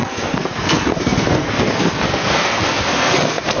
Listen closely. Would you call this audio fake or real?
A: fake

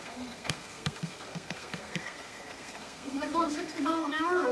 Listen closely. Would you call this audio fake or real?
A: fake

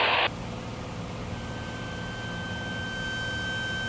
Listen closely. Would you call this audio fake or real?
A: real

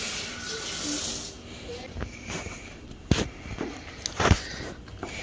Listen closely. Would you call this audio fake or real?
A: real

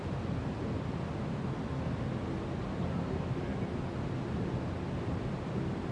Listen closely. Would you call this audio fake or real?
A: real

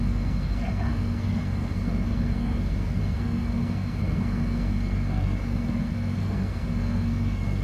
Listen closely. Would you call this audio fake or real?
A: fake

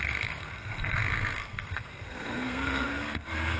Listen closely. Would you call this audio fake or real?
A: fake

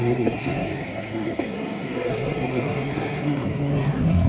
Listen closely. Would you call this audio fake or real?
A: fake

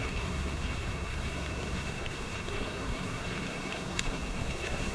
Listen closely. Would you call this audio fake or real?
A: fake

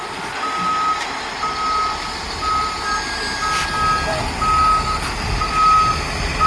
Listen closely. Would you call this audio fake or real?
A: real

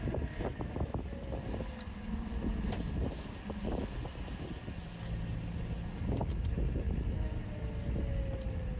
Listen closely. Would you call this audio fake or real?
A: real